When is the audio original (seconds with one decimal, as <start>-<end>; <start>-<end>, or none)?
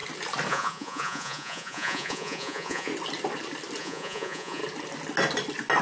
0.0-0.5; 2.9-3.8; 4.6-5.8